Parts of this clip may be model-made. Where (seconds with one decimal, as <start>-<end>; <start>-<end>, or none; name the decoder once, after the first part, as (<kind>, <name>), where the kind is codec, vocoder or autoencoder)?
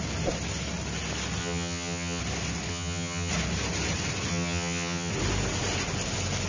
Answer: 1.4-2.2 (vocoder, HiFi-GAN); 2.7-3.3; 4.3-5.1